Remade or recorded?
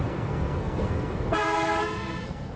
remade